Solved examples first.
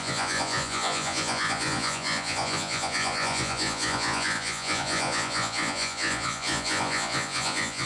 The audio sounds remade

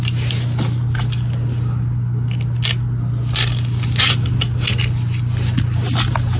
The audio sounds recorded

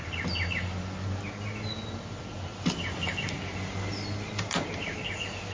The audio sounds recorded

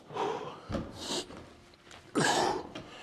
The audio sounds recorded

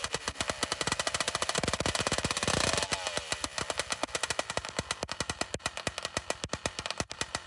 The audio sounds recorded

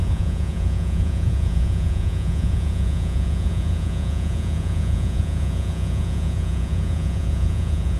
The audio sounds remade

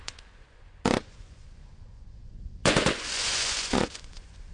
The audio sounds remade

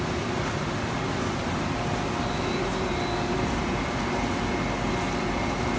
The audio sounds recorded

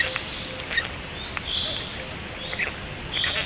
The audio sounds recorded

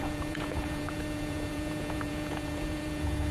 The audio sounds remade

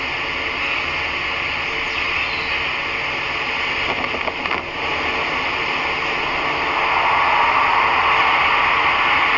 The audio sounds recorded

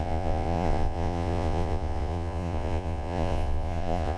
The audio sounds remade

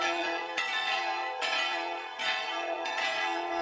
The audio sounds remade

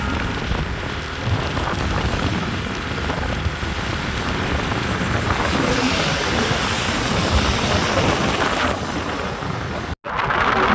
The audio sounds recorded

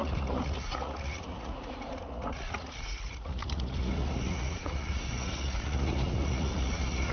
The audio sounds remade